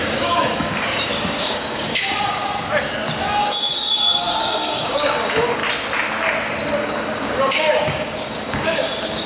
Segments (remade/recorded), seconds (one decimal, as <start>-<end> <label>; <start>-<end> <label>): 0.0-2.4 remade; 2.4-3.5 recorded; 3.5-5.6 remade; 5.6-6.8 recorded; 6.8-9.3 remade